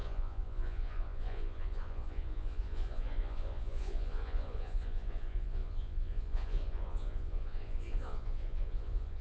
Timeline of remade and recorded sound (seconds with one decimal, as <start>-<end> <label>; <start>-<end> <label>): 0.0-9.2 remade